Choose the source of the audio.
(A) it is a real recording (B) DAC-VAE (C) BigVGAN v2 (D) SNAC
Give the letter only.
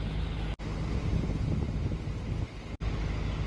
A